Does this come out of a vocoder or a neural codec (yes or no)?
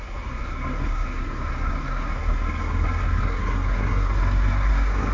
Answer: yes